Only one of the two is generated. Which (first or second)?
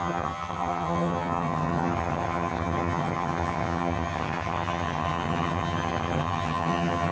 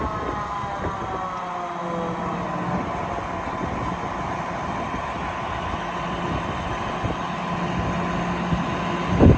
first